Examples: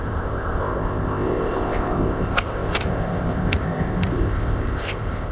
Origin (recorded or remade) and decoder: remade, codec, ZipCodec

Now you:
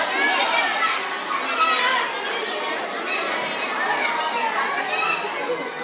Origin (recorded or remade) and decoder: recorded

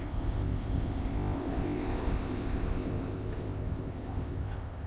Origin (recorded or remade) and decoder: remade, codec, ZipCodec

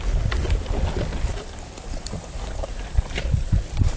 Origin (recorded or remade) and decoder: recorded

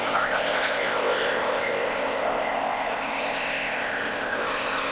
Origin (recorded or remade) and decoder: remade, codec, ZipCodec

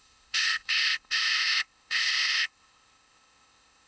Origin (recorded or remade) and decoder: remade, codec, ZipCodec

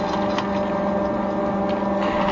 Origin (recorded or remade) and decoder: recorded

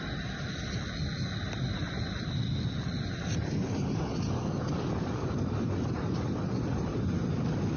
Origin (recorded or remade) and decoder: recorded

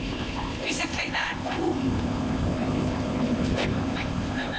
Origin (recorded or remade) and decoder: remade, codec, ZipCodec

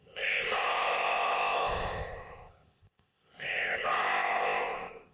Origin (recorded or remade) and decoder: remade, codec, ZipCodec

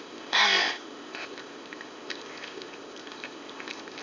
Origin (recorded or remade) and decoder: remade, codec, ZipCodec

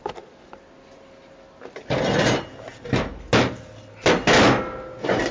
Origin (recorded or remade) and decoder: recorded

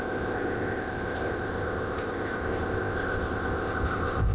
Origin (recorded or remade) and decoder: remade, codec, ZipCodec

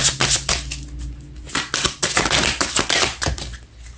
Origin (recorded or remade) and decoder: recorded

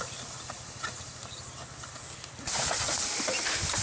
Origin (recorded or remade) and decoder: recorded